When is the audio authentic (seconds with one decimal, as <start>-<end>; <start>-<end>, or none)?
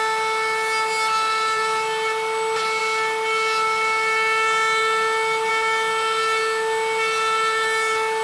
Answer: 0.0-8.2